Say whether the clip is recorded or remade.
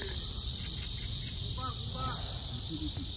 recorded